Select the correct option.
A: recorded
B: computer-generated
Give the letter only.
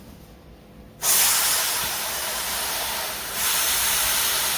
A